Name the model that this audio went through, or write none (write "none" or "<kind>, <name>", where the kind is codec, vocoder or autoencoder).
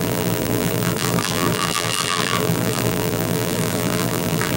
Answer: vocoder, BigVGAN v2